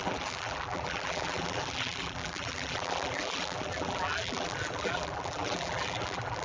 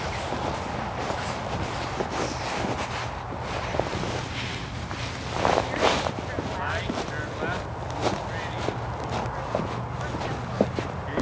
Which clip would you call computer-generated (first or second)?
first